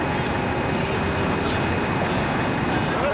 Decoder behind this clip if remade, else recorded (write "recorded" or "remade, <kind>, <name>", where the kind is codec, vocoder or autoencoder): recorded